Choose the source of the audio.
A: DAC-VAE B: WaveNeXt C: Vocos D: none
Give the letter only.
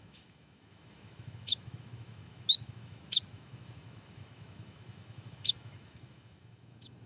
A